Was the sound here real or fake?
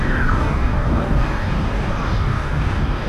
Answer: fake